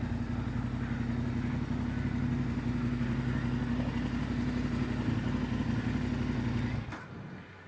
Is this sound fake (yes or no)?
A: no